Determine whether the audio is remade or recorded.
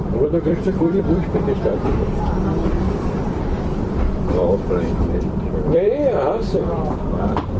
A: remade